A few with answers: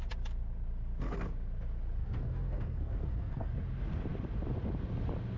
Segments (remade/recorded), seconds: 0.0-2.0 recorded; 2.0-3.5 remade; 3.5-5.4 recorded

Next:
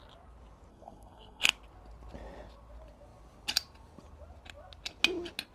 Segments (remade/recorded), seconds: 0.0-0.7 recorded; 0.7-1.5 remade; 1.5-5.5 recorded